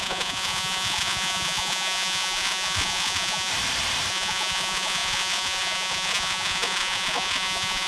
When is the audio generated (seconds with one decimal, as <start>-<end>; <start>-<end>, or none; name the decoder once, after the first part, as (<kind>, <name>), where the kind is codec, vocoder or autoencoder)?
0.0-3.5 (vocoder, Vocos); 4.1-7.9